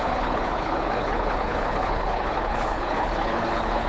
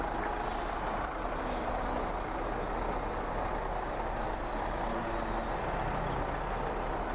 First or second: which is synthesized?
first